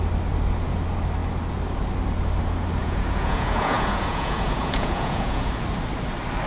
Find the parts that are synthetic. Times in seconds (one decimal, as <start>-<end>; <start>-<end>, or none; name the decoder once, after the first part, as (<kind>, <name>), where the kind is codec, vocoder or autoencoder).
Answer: 2.8-5.5 (vocoder, Vocos)